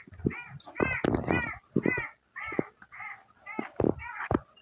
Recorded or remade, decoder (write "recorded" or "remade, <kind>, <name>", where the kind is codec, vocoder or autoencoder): recorded